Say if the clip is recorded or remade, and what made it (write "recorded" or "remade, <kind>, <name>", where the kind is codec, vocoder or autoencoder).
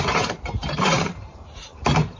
remade, vocoder, BigVGAN v2